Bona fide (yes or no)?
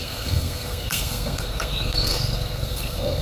no